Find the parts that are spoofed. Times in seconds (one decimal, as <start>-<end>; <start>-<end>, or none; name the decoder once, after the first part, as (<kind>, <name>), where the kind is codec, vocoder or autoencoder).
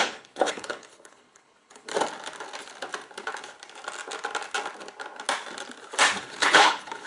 0.0-1.9 (codec, HILCodec); 6.2-7.1